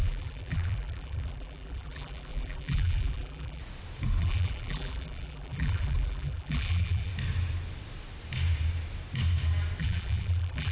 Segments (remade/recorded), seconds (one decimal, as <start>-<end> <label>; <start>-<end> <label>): 0.0-3.6 remade; 3.6-4.2 recorded; 4.2-7.1 remade; 7.1-9.8 recorded; 9.8-10.7 remade